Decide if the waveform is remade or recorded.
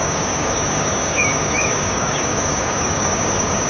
remade